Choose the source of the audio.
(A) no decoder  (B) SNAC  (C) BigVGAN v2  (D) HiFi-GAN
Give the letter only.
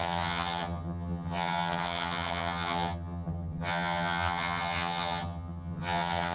D